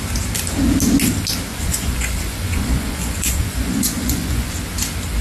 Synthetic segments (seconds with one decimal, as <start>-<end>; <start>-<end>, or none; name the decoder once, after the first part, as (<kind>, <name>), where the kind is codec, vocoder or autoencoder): 1.5-4.6 (vocoder, Vocos)